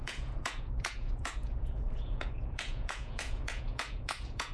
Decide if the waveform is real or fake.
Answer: fake